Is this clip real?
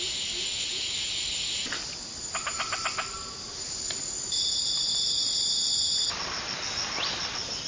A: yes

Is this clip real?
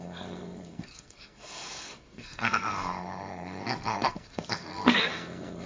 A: no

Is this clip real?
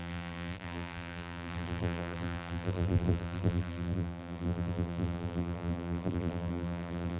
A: no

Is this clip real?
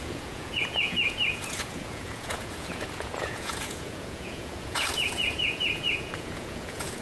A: no